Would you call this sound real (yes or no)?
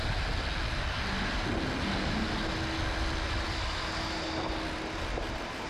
yes